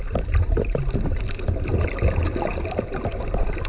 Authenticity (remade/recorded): recorded